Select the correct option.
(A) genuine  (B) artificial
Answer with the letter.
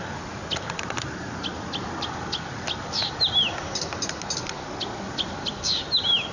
A